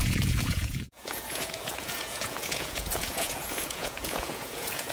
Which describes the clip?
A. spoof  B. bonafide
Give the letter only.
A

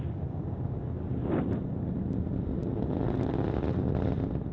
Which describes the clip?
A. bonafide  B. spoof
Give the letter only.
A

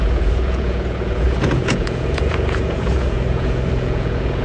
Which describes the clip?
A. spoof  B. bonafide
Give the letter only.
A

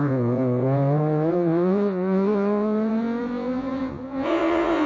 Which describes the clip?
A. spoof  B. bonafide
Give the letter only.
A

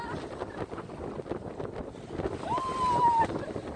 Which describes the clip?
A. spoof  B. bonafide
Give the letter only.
B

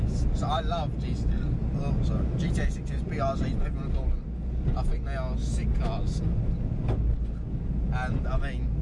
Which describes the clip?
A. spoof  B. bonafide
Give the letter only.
B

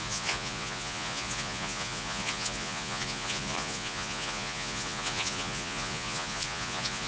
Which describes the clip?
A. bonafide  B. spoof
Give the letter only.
B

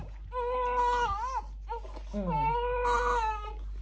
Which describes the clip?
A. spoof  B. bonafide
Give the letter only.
B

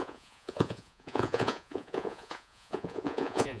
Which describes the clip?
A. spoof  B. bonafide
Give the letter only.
A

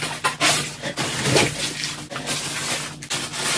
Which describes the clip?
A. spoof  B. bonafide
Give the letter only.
B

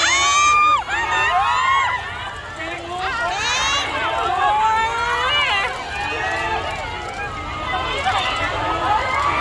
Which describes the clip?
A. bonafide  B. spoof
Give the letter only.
A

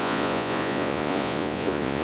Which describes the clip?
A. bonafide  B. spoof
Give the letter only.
B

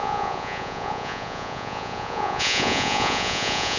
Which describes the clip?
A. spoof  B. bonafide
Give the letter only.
A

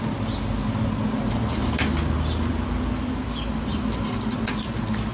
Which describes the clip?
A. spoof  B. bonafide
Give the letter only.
B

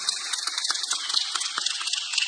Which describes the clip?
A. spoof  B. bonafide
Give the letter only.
A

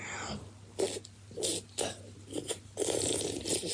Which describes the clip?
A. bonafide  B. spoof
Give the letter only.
A